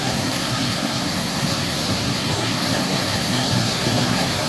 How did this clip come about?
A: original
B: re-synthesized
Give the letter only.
B